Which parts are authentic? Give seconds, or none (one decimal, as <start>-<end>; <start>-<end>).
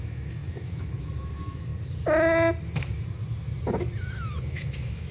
1.7-4.4